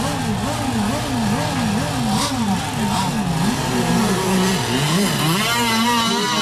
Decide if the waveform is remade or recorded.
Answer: recorded